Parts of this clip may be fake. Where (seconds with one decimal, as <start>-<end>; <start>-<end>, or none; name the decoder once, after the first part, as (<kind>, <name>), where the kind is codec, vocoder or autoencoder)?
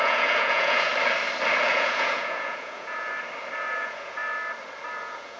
0.0-0.9 (vocoder, Vocos); 1.7-3.1; 3.7-4.2; 5.0-5.4